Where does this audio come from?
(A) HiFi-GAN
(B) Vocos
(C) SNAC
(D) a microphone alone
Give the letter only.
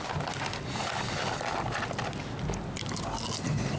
D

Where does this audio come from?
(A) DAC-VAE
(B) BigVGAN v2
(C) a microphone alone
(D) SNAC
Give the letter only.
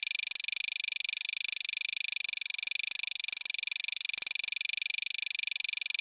C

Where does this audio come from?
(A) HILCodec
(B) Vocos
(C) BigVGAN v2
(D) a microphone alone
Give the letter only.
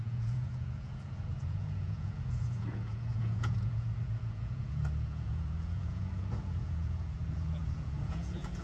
B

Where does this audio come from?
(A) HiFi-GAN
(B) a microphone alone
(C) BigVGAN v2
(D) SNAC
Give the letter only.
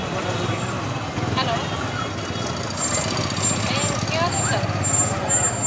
B